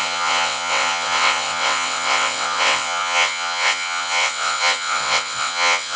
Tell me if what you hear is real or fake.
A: fake